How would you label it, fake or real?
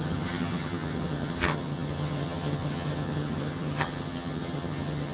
fake